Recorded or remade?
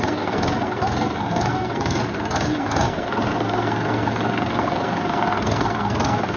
remade